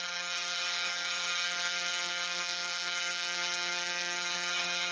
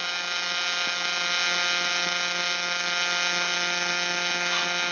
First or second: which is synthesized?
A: first